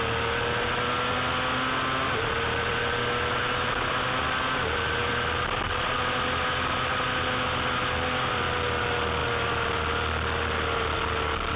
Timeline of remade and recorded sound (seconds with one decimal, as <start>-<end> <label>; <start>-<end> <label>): 0.0-11.6 recorded